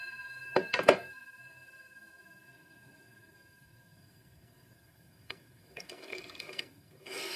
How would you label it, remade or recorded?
remade